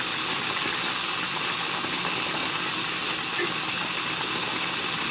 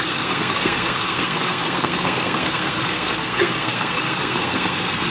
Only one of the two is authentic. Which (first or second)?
first